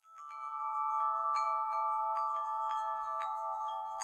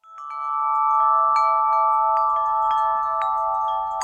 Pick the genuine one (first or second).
second